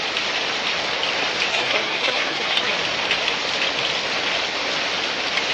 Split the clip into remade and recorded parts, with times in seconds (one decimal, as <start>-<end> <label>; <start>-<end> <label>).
0.0-1.5 recorded; 1.5-2.7 remade; 2.7-5.5 recorded